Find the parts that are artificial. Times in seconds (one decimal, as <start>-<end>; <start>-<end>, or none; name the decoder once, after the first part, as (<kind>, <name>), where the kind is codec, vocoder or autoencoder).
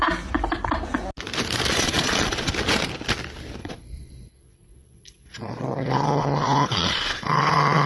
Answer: 1.7-2.5 (vocoder, Vocos); 3.6-7.9